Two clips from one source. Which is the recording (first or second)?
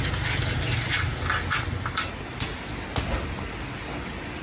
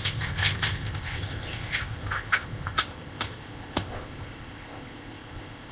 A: first